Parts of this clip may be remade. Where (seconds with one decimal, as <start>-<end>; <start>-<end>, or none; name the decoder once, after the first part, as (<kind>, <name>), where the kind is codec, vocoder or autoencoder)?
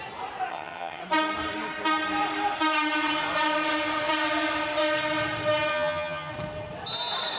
0.5-1.0 (vocoder, HiFi-GAN); 5.7-6.3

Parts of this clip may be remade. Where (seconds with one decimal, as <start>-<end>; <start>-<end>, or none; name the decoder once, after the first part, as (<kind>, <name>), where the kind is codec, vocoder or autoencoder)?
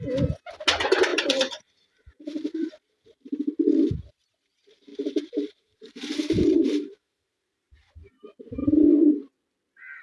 1.1-2.5 (vocoder, BigVGAN v2); 4.9-7.9; 8.6-9.1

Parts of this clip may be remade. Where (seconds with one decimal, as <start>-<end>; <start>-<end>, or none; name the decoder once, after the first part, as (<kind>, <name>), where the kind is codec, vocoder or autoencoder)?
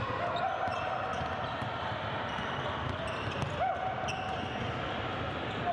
none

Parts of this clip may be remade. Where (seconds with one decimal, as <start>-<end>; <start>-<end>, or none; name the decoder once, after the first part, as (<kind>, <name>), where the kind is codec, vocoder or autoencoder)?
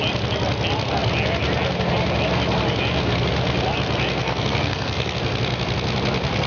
4.2-5.2 (codec, SNAC)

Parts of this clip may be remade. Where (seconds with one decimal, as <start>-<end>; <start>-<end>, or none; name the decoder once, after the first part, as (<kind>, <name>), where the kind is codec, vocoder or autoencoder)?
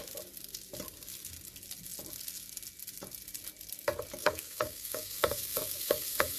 4.2-6.4 (codec, SNAC)